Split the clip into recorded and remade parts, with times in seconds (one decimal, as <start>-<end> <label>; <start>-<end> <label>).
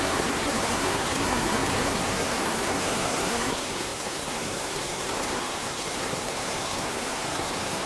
0.0-7.9 remade